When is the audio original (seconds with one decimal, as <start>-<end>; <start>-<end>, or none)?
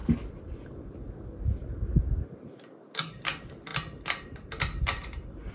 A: 0.0-5.5